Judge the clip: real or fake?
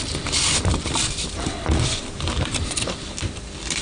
fake